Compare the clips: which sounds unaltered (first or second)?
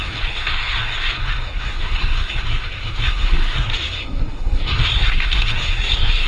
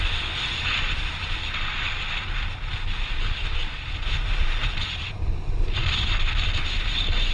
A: second